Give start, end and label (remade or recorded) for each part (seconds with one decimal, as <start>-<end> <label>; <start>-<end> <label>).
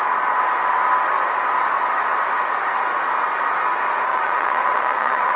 0.0-4.1 recorded; 4.1-5.4 remade